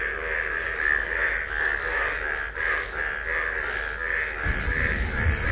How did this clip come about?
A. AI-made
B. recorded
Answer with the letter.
B